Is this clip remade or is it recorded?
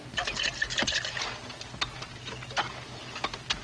recorded